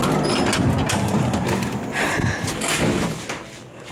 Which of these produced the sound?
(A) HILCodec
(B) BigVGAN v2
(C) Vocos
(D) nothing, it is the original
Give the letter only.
D